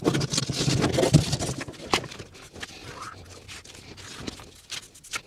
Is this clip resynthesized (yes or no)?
no